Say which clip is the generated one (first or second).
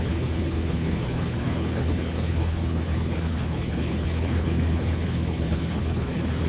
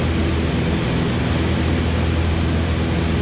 first